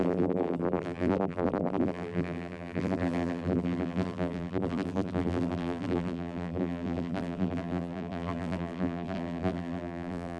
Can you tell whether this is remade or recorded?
remade